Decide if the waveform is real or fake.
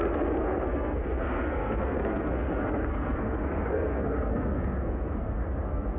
fake